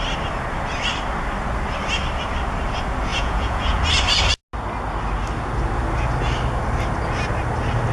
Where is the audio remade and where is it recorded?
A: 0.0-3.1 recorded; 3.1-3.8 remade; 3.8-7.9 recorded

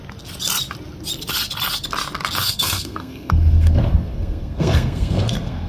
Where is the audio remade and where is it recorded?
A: 0.0-2.4 recorded; 2.4-5.7 remade

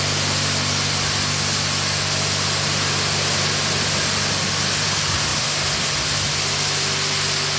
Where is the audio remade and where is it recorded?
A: 0.0-7.6 recorded

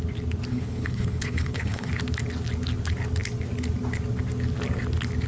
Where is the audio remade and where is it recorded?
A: 0.0-0.5 recorded; 0.5-1.9 remade; 1.9-5.3 recorded

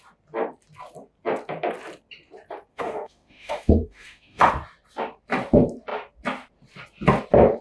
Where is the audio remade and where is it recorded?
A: 0.0-2.7 recorded; 2.7-4.5 remade; 4.5-7.6 recorded

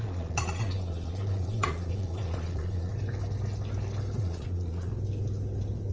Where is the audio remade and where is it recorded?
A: 0.0-2.9 remade; 2.9-4.2 recorded; 4.2-4.9 remade; 4.9-5.9 recorded

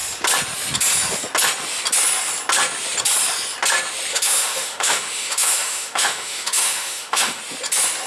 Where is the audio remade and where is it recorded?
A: 0.0-4.1 recorded; 4.1-7.4 remade; 7.4-8.1 recorded